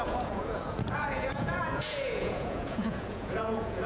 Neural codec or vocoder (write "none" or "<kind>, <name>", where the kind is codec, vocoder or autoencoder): vocoder, Vocos